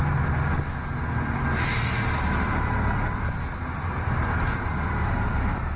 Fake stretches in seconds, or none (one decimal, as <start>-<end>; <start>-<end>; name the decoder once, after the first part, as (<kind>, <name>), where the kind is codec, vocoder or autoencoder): none